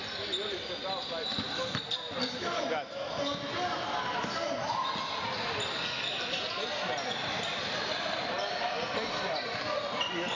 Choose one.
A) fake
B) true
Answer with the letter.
B